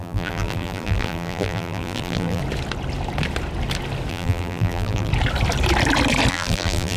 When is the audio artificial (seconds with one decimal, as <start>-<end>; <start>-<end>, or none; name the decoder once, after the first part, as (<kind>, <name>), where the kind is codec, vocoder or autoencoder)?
0.0-2.4 (vocoder, BigVGAN v2); 4.1-5.1; 6.3-7.0